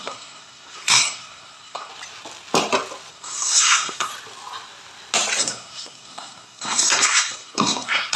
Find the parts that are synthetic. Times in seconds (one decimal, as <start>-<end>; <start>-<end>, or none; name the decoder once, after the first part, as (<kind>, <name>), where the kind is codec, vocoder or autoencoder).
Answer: 0.0-1.9 (codec, SNAC); 3.1-4.1; 5.4-8.2